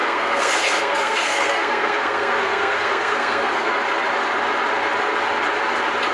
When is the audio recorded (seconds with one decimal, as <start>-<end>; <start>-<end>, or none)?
3.7-6.1